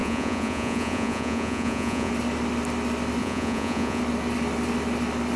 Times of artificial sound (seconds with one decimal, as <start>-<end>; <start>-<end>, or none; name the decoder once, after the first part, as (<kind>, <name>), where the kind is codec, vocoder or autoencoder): 0.0-2.1 (vocoder, Vocos); 3.2-4.0